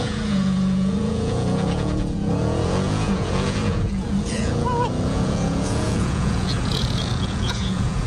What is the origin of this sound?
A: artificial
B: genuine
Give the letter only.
A